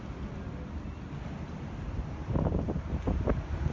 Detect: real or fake real